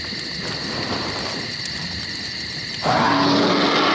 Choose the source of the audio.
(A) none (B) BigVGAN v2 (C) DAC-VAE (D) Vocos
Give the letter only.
A